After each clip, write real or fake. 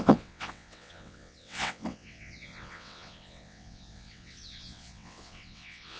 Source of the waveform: fake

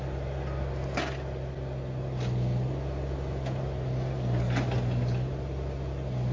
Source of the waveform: real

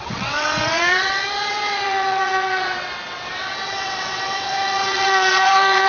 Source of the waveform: fake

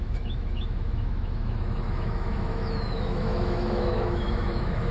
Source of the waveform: fake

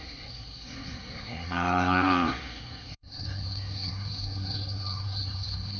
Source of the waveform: fake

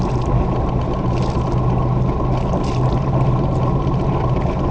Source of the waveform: real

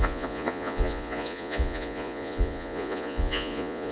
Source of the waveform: fake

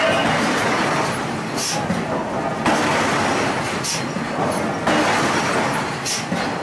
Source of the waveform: real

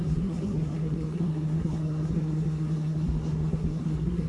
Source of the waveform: fake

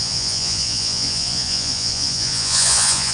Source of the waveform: fake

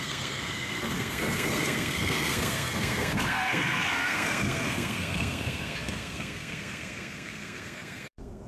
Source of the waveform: fake